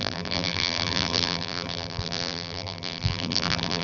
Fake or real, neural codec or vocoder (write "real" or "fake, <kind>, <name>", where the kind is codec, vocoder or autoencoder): fake, vocoder, BigVGAN v2